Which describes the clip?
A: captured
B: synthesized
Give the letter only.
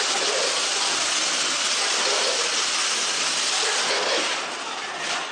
A